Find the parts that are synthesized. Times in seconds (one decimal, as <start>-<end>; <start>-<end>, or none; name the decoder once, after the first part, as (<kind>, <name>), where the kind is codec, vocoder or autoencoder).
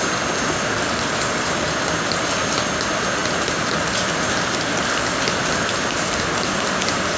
none